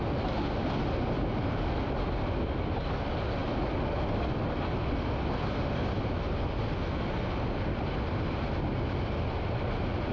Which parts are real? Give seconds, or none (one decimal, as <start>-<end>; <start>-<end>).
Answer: 0.0-10.1